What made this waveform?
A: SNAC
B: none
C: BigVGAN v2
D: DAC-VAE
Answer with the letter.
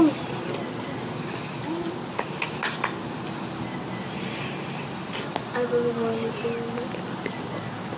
B